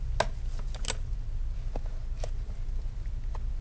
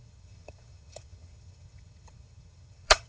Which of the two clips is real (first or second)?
first